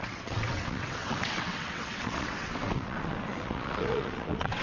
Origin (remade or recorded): remade